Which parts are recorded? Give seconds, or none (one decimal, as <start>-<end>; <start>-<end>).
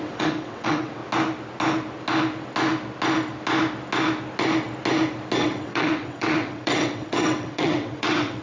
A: 1.0-5.4